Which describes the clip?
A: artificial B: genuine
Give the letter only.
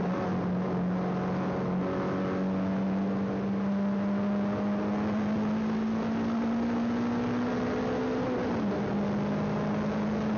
B